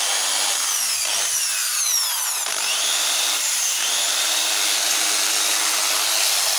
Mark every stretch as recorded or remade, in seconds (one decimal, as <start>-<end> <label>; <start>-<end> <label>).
0.0-1.6 recorded; 1.6-4.5 remade; 4.5-6.6 recorded